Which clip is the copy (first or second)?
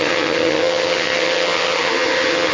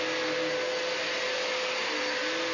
first